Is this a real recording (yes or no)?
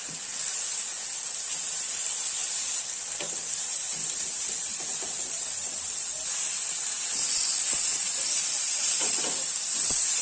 no